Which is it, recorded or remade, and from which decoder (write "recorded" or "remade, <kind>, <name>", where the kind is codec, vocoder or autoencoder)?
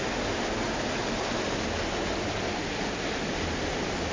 recorded